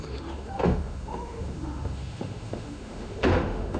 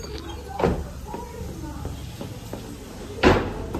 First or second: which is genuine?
second